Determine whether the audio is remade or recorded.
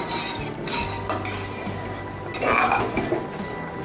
recorded